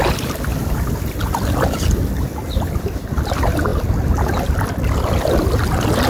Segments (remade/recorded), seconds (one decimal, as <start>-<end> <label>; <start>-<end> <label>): 0.0-6.1 recorded

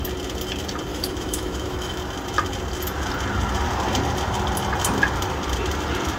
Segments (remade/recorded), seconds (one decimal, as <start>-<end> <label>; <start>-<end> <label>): 0.0-0.9 recorded; 0.9-2.0 remade; 2.0-6.2 recorded

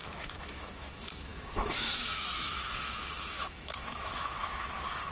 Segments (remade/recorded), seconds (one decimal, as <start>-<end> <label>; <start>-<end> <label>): 0.0-5.1 remade

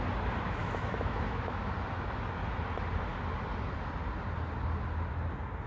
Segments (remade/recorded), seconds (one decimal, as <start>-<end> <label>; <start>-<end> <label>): 0.0-0.6 recorded; 0.6-1.7 remade; 1.7-5.7 recorded